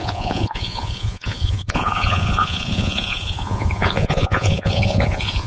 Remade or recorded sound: remade